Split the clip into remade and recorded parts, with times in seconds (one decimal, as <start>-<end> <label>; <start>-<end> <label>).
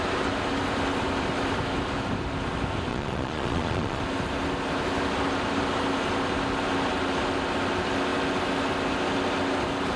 0.0-2.9 recorded; 2.9-4.0 remade; 4.0-10.0 recorded